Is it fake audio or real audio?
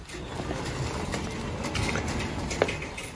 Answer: real